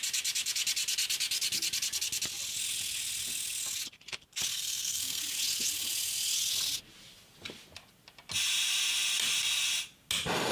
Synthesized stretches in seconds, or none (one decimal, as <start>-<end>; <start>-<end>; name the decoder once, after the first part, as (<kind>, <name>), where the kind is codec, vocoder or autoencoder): 4.5-5.2 (codec, SNAC)